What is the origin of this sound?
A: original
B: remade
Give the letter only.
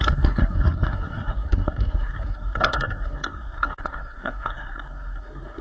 B